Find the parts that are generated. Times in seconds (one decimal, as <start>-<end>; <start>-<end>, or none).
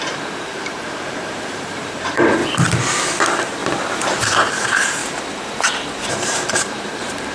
0.0-2.4; 3.2-3.6; 4.5-5.0; 6.1-7.3